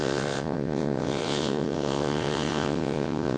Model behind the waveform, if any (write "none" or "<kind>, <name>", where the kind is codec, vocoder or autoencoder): vocoder, WaveNeXt